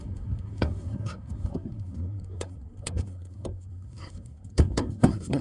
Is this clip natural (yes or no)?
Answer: no